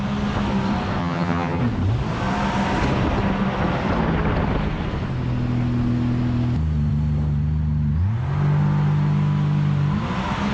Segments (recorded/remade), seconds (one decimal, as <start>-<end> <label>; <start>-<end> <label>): 0.0-1.0 recorded; 1.0-1.6 remade; 1.6-10.5 recorded